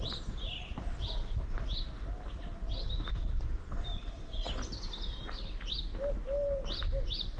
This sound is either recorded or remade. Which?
recorded